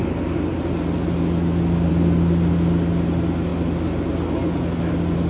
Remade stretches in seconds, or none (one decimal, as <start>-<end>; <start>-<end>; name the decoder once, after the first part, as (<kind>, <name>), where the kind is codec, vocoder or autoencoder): none